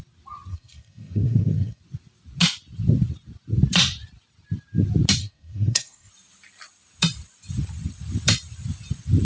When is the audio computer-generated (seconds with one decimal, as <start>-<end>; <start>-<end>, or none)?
0.5-1.8; 5.2-6.1